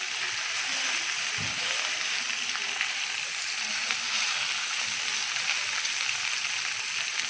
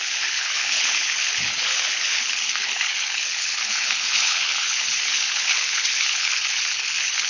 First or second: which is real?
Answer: first